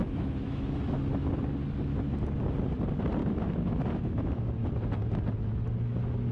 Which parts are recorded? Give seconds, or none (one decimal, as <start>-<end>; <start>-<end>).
1.4-3.2; 4.4-6.3